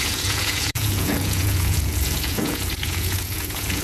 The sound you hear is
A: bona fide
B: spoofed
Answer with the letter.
B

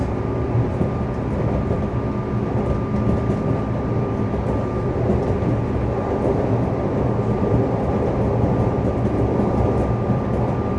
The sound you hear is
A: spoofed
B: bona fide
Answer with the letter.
B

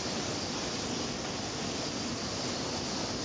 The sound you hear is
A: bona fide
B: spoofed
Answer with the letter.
A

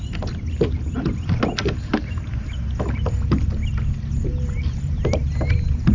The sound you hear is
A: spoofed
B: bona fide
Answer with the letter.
B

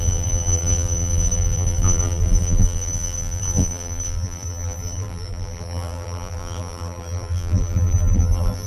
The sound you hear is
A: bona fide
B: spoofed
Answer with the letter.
B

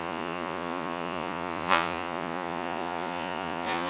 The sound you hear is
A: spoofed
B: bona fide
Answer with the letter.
A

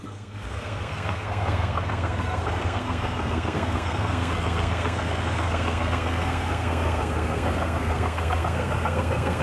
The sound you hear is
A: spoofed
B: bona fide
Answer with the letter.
A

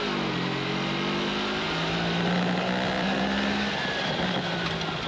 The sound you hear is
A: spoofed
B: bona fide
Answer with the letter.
B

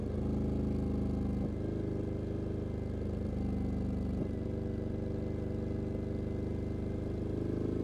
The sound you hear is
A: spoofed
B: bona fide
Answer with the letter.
B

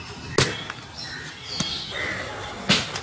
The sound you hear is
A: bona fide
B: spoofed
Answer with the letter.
A